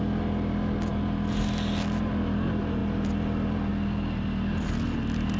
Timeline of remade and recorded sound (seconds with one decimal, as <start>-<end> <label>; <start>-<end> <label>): 0.0-5.4 recorded